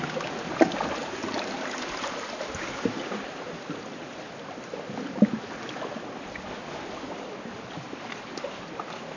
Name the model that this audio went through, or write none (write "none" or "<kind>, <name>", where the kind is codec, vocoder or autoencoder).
none